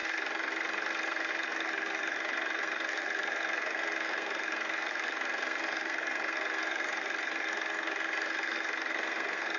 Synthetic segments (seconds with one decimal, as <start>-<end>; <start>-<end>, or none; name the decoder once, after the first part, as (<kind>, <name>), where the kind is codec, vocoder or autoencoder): 0.0-9.6 (codec, SNAC)

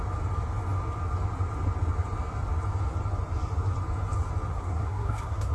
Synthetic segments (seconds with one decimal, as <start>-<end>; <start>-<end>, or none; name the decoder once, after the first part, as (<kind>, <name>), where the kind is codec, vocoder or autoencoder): 4.5-5.5 (codec, SNAC)